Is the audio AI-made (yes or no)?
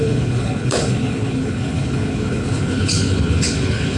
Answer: yes